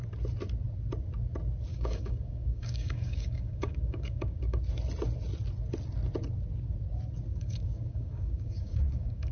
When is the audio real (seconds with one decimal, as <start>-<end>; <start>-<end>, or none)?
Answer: 0.0-1.7; 4.6-7.3

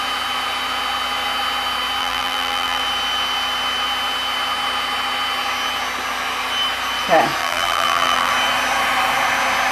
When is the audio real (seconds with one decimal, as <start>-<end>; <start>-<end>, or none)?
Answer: 0.0-2.0; 2.8-7.4; 8.3-9.7

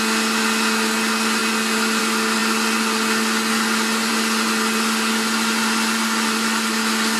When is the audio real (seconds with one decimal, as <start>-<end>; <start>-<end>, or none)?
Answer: 0.0-7.2

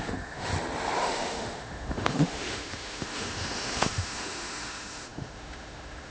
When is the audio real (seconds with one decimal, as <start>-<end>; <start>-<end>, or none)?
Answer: 0.5-1.0